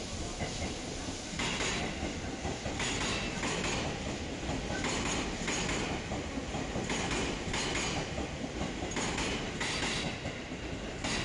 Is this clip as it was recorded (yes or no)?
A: yes